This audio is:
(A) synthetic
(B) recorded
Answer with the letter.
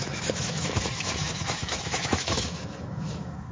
A